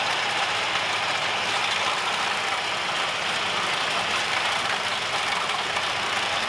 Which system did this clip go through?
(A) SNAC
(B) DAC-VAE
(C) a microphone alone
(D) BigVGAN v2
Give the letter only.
C